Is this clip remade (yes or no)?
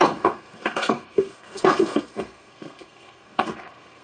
yes